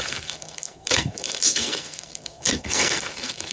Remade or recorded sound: remade